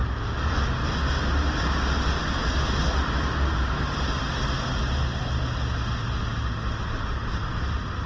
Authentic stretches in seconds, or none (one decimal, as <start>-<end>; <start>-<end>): 0.0-8.1